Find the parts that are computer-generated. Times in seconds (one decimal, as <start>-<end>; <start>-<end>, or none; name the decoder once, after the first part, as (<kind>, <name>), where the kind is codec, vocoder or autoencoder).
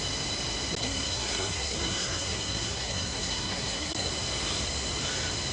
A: 0.8-4.1 (codec, SNAC)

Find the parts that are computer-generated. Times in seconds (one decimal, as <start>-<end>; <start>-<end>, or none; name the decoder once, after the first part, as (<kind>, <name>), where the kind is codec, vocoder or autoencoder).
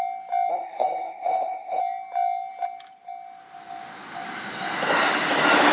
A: 0.5-1.8 (codec, SNAC)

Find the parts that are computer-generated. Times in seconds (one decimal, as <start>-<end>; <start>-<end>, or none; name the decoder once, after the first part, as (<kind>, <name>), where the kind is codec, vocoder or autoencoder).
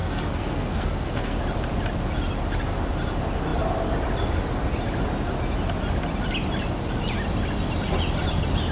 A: 0.0-1.4 (codec, SNAC)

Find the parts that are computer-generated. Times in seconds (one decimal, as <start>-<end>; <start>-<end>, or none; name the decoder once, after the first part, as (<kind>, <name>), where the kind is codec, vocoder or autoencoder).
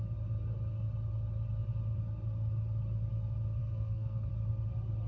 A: 3.6-4.3 (codec, SNAC)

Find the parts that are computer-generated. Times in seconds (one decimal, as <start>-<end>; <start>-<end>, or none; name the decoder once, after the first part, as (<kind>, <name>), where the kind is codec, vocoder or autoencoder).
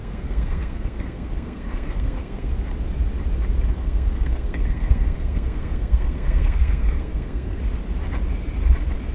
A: 0.0-2.5 (codec, SNAC); 3.8-7.6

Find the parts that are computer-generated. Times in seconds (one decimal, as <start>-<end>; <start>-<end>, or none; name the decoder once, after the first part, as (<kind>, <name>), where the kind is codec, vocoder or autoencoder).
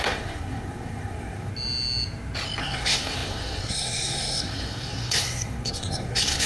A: 0.0-1.5 (codec, SNAC); 2.6-6.5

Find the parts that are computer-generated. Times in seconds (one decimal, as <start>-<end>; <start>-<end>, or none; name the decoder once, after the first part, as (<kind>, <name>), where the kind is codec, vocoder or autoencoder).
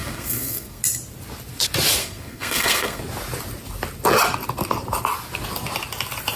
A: 0.0-0.8 (codec, SNAC); 2.0-3.0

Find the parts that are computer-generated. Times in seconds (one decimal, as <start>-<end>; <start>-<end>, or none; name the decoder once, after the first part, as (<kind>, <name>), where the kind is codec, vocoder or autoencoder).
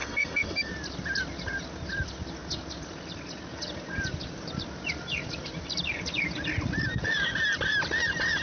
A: 0.0-0.7 (codec, SNAC)